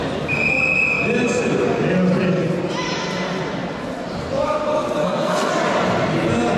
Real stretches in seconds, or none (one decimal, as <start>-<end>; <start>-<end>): 0.0-5.0; 5.5-6.6